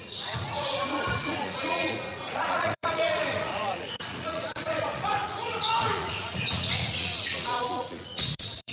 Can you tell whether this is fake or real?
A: fake